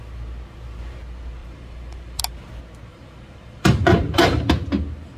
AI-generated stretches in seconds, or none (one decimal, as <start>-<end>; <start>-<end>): 1.4-2.2; 2.9-4.4